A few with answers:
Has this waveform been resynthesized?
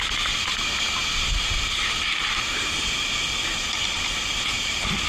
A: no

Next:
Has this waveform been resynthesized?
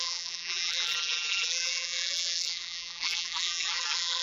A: yes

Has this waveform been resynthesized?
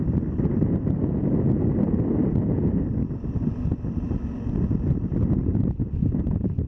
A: no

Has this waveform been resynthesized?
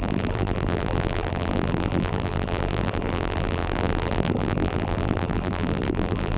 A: yes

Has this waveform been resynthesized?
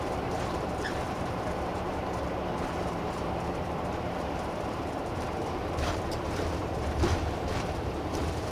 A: yes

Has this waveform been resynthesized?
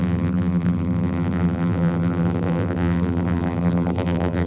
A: yes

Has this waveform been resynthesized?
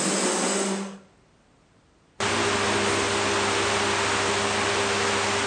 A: no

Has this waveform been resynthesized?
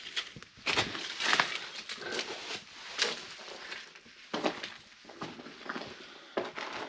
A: no